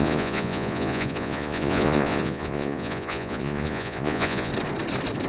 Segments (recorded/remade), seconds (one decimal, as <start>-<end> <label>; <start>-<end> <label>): 0.0-4.5 remade; 4.5-5.3 recorded